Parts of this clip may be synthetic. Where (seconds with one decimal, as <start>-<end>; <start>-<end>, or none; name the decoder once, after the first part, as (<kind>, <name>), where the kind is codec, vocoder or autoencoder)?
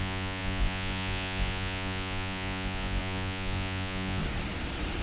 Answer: 0.0-4.2 (vocoder, Vocos)